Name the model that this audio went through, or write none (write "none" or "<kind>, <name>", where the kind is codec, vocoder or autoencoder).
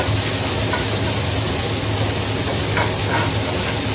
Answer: none